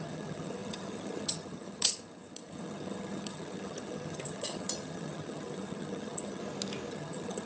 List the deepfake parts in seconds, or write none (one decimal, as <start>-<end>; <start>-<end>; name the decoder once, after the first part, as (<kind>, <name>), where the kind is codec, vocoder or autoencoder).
0.0-6.4 (vocoder, HiFi-GAN); 6.9-7.5

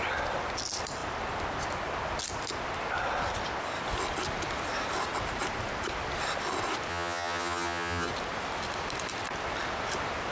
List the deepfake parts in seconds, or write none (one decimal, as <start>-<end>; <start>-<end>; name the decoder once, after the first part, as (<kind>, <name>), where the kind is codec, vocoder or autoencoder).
6.9-8.1 (vocoder, HiFi-GAN)